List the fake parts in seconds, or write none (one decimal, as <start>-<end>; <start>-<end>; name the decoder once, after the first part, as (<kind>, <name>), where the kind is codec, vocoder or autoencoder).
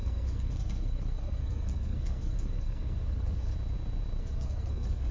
0.0-3.5 (codec, SNAC); 4.2-5.1